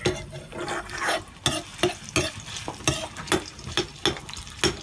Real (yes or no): yes